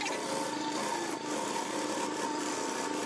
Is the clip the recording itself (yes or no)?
yes